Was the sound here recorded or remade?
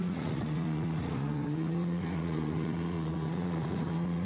remade